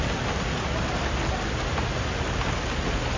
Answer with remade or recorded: recorded